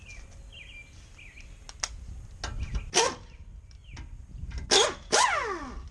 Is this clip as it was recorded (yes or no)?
yes